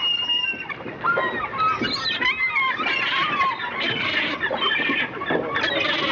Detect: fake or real real